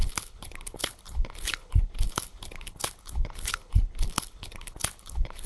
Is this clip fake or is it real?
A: fake